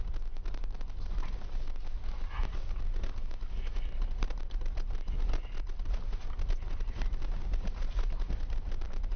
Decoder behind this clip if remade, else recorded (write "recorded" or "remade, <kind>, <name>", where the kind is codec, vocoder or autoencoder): recorded